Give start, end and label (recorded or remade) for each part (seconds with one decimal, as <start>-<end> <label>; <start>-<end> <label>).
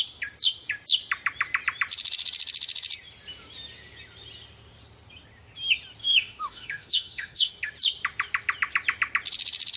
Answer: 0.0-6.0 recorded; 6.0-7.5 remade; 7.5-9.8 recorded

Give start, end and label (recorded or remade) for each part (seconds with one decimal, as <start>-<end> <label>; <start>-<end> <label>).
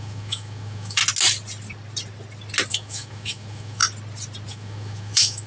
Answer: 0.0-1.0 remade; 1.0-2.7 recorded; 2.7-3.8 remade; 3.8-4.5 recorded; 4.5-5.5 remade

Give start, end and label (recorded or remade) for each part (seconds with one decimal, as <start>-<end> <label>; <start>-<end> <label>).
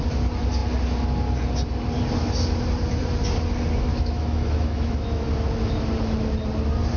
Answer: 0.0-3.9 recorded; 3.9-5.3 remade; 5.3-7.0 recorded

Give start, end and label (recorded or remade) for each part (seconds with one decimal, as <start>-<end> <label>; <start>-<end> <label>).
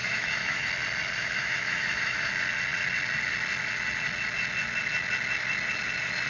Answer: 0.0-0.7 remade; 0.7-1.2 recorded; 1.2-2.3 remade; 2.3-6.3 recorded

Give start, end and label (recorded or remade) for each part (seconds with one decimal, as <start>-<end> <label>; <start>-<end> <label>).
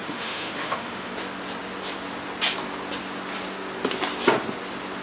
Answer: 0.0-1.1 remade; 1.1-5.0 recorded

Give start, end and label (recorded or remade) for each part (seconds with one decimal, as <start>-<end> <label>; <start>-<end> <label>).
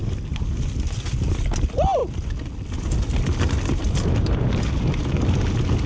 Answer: 0.0-5.9 recorded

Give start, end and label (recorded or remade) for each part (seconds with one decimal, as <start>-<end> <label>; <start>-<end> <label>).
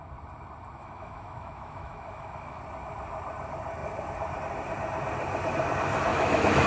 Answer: 0.0-0.8 recorded; 0.8-2.6 remade; 2.6-6.1 recorded; 6.1-6.7 remade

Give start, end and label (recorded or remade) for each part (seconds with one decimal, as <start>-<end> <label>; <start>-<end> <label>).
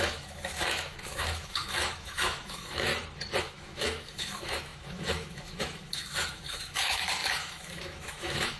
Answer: 0.0-2.9 remade; 2.9-3.4 recorded; 3.4-8.6 remade